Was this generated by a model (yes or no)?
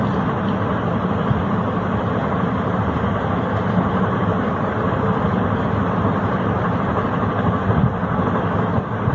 no